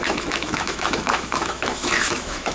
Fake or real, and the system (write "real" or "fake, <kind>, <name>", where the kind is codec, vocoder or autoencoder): fake, autoencoder, DAC-VAE